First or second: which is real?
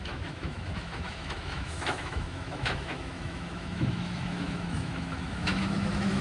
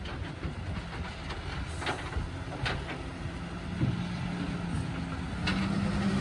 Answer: second